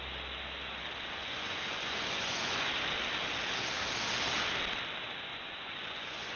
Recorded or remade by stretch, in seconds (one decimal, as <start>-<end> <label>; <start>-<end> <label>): 0.0-1.2 recorded; 1.2-2.7 remade; 2.7-5.3 recorded; 5.3-6.4 remade

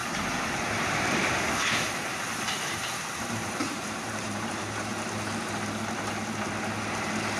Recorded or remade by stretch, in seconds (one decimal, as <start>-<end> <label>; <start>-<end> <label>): 0.0-4.9 remade; 4.9-7.4 recorded